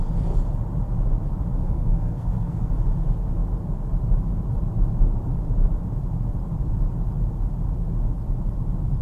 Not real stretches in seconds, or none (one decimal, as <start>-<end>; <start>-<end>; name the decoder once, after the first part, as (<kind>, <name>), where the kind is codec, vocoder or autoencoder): 1.6-2.7 (codec, SNAC)